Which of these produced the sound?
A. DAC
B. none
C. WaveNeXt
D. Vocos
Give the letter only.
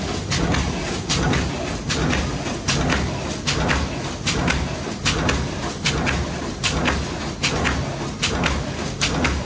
B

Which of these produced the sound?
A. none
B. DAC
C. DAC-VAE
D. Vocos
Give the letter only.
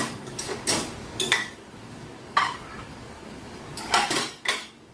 B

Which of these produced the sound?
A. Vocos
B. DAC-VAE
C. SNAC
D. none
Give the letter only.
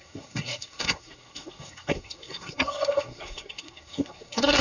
C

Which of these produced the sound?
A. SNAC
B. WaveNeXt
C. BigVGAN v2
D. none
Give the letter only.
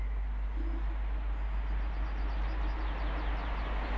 D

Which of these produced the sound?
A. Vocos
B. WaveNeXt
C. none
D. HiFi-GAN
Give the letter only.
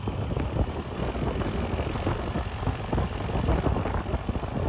C